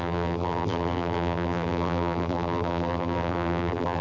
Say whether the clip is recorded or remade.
remade